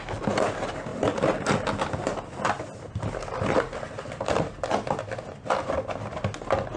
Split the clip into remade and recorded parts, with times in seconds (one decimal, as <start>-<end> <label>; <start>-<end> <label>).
0.0-0.9 recorded; 0.9-4.4 remade; 4.4-6.8 recorded